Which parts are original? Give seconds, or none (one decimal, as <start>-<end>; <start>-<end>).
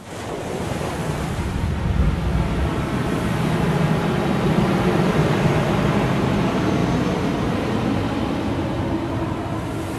0.0-1.0; 1.5-2.7; 5.5-10.0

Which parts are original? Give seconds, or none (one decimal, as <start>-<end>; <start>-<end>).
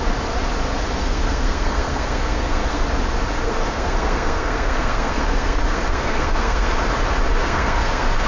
0.0-1.0; 2.8-3.4; 6.8-7.4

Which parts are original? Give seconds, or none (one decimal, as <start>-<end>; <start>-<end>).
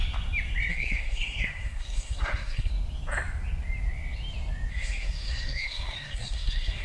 0.0-0.7; 2.7-4.7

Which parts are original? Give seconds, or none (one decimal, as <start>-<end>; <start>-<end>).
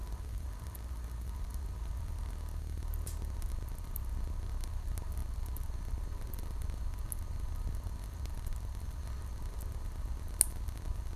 0.0-11.2